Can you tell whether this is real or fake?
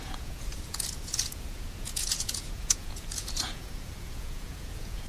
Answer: fake